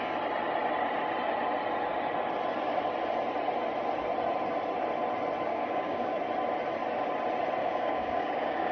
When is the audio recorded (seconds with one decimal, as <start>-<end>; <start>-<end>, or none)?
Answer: 0.0-5.5; 6.2-7.6